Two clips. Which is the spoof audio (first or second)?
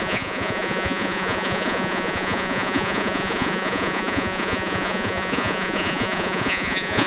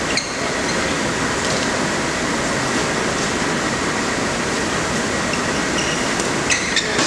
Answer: first